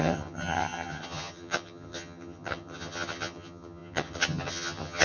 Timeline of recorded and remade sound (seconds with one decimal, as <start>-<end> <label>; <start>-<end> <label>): 0.0-5.0 remade